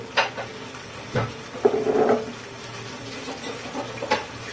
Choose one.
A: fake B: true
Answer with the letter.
B